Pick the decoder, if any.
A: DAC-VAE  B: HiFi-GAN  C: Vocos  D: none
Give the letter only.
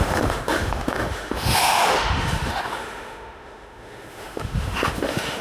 A